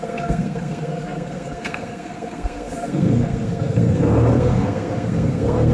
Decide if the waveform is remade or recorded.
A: remade